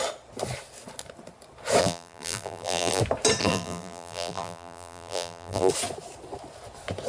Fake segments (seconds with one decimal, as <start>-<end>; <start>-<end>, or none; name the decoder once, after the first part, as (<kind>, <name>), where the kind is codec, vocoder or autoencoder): 1.8-3.0 (vocoder, BigVGAN v2); 3.4-5.7